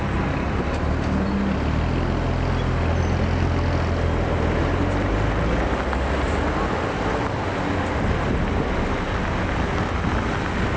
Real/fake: real